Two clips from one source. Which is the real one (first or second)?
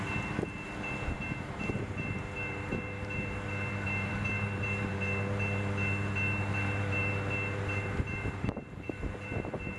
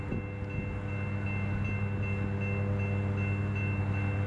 second